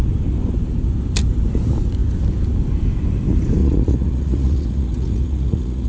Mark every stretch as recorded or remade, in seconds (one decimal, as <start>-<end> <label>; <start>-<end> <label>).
0.0-3.6 recorded; 3.6-5.9 remade